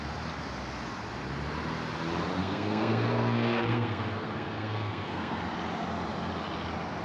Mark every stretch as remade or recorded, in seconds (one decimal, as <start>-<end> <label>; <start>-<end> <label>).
0.0-2.4 recorded; 2.4-5.4 remade; 5.4-7.0 recorded